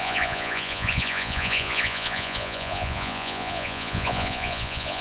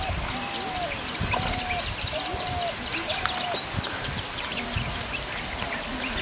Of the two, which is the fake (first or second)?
first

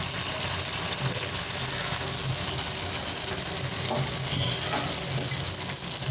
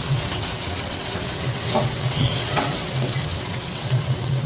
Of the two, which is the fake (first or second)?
second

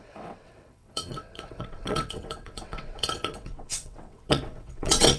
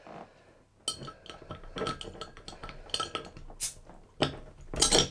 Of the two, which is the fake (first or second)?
first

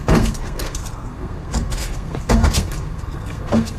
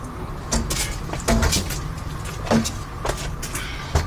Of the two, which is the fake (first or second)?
first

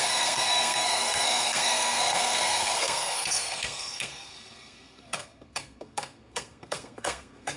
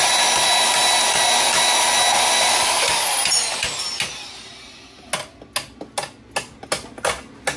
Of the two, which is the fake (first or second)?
first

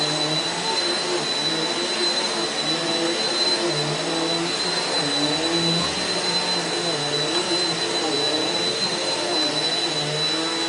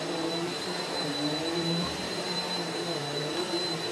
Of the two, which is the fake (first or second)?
second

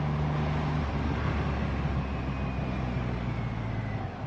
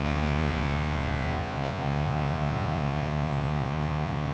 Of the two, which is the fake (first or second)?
second